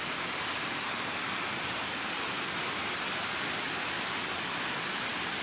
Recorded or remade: recorded